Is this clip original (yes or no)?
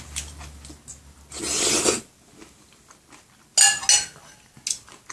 yes